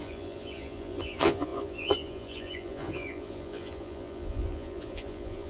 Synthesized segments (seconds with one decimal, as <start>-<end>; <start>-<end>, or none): 0.0-5.5